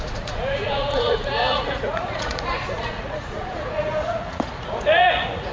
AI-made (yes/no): yes